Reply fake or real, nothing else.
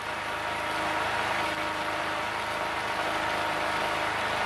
real